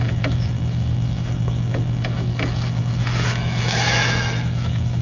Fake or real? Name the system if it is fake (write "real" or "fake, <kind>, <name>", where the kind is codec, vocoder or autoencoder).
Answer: fake, autoencoder, DAC-VAE